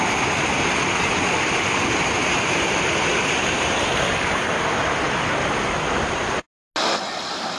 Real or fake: real